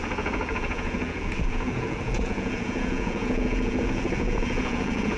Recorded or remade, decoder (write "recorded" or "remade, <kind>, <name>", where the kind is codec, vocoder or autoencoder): remade, vocoder, Vocos